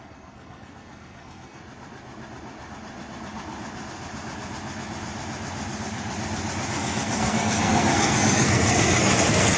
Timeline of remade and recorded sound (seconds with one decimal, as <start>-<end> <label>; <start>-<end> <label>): 0.0-1.6 remade; 1.6-6.7 recorded; 6.7-9.6 remade